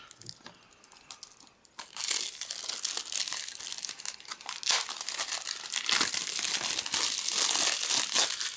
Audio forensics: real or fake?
real